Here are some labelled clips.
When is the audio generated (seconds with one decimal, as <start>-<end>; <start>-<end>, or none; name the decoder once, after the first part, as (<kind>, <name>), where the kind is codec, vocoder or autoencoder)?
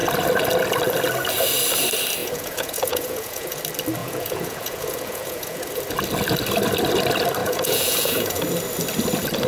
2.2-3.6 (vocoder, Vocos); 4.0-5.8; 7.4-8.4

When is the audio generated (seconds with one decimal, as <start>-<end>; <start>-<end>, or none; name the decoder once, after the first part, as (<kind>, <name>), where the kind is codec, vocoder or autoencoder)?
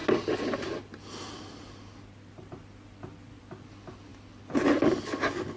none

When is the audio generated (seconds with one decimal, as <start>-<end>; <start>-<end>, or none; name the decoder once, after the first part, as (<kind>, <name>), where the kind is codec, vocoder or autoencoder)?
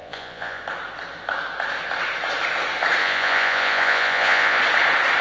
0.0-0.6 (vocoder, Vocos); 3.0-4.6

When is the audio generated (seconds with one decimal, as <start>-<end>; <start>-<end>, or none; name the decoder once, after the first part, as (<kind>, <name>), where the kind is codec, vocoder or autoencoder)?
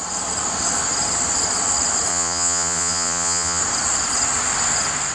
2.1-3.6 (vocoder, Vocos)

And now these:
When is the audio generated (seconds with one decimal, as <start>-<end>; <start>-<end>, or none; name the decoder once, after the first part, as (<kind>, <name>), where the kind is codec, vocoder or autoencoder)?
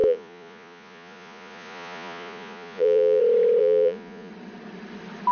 0.0-3.2 (vocoder, Vocos); 3.6-4.3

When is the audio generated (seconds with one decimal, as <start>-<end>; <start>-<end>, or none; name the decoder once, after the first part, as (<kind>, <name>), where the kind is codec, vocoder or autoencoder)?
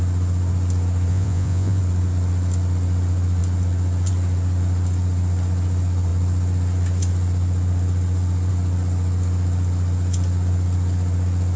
1.1-1.8 (vocoder, Vocos)